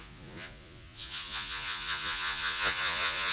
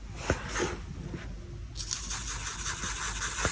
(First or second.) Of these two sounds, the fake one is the first